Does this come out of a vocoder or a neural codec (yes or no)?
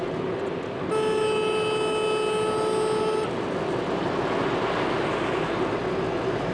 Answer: no